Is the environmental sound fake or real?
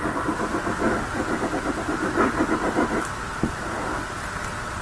real